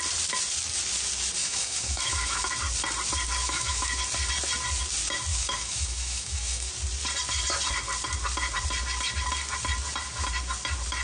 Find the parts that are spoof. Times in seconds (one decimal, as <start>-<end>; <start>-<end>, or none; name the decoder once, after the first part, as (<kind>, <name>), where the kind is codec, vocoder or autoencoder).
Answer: 1.4-2.5 (autoencoder, DAC-VAE); 3.4-4.0; 5.3-6.7